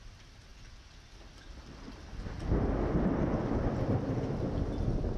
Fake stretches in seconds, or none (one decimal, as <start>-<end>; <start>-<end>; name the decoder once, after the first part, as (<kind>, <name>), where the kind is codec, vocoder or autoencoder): none